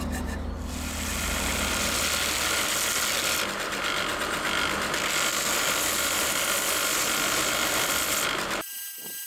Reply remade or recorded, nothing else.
recorded